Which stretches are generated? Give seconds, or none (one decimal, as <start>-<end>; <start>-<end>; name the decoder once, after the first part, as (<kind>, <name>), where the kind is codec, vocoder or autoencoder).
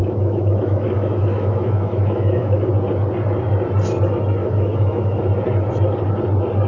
0.0-2.7 (autoencoder, DAC-VAE); 4.4-5.2